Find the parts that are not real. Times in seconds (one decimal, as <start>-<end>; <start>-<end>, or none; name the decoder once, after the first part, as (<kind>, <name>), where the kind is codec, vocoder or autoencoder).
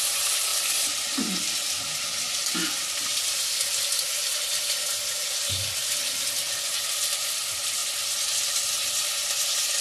none